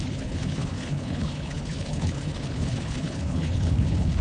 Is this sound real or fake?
fake